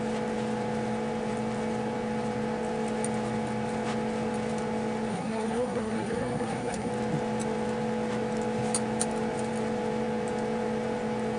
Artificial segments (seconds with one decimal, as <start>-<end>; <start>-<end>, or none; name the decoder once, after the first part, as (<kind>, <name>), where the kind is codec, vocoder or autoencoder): 5.1-6.9 (codec, SNAC)